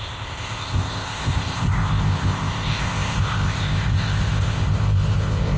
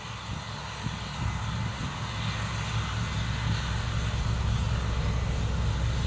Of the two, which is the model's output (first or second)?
first